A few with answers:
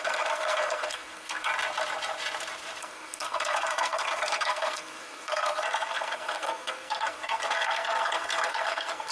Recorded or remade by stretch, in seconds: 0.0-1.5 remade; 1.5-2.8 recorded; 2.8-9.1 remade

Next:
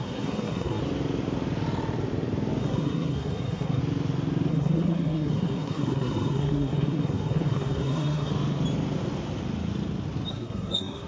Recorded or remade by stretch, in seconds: 0.0-0.8 remade; 0.8-2.6 recorded; 2.6-3.8 remade; 3.8-4.5 recorded; 4.5-8.3 remade; 8.3-10.3 recorded; 10.3-11.1 remade

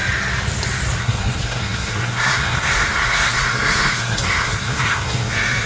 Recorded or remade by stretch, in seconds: 0.0-1.0 recorded; 1.0-5.7 remade

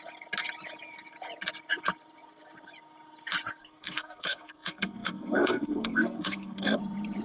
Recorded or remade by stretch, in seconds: 0.0-3.6 recorded; 3.6-6.8 remade; 6.8-7.2 recorded